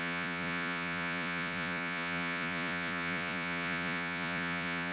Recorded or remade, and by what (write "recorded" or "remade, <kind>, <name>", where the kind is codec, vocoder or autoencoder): remade, vocoder, Vocos